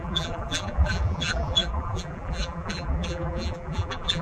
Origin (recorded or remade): remade